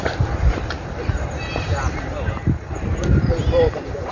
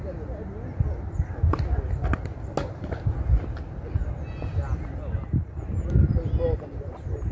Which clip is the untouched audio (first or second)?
second